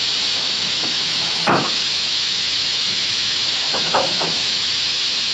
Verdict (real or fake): fake